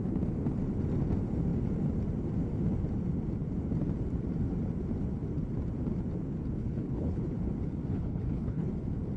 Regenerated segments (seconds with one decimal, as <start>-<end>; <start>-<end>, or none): 6.6-7.3; 7.9-8.7

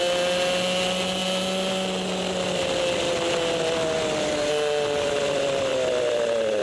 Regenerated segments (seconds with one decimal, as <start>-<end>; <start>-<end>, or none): none

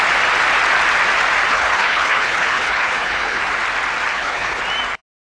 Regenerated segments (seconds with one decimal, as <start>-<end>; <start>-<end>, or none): 1.5-3.4; 4.1-4.6

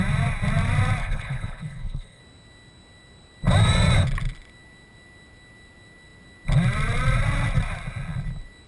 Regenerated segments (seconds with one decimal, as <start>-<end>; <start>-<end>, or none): 1.0-2.2

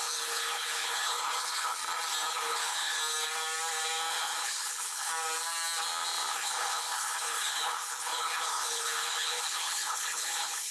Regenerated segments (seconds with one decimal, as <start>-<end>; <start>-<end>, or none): 0.0-1.8; 2.3-3.0; 4.1-5.1; 6.3-10.7

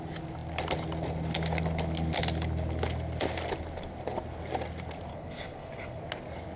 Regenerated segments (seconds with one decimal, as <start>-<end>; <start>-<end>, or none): 5.1-6.0

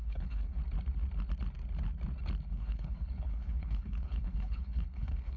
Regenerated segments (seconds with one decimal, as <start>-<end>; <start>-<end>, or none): 0.0-0.6; 2.5-5.4

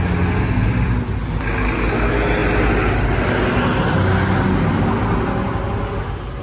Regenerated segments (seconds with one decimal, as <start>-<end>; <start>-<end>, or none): none